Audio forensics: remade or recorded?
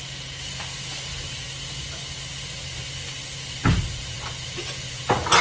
recorded